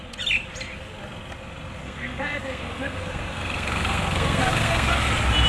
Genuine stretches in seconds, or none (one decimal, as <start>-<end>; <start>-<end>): 0.0-1.8; 5.1-5.5

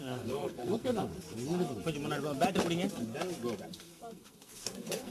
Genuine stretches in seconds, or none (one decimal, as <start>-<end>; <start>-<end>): 1.1-3.7

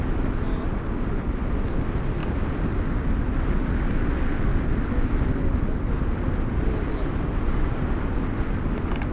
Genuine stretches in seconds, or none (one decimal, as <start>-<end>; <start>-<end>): 0.0-9.1

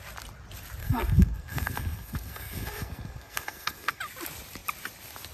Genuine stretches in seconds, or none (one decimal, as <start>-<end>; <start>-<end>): 0.0-0.8; 4.0-5.3